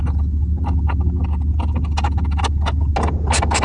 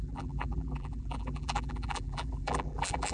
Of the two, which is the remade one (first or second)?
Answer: second